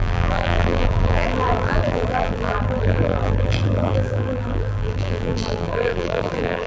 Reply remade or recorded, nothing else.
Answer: remade